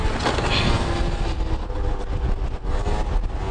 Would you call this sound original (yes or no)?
yes